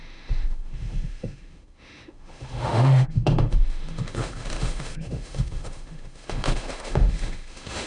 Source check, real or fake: fake